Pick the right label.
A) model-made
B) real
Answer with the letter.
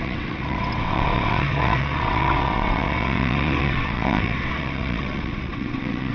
A